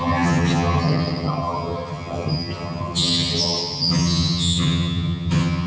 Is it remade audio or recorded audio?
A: remade